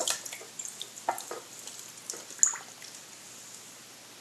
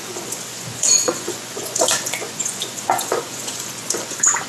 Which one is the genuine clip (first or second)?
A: first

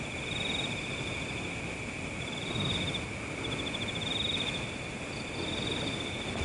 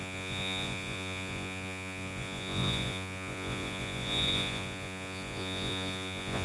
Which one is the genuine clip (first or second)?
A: first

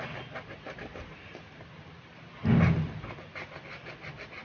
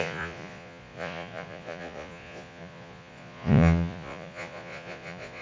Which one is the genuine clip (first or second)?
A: first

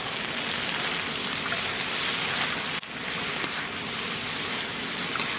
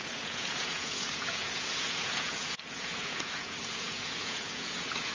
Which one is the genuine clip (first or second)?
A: first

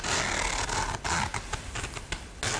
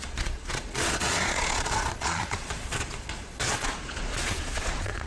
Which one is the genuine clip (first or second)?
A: first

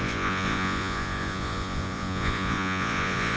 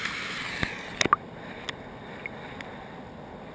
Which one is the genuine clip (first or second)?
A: second